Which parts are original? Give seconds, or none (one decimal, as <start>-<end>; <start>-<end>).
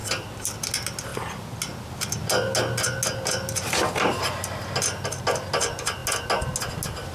0.0-7.1